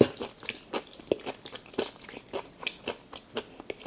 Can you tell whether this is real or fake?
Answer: real